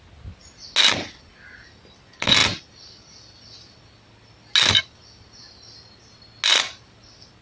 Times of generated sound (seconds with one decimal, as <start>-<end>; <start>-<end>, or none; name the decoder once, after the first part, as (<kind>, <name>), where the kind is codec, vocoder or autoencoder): none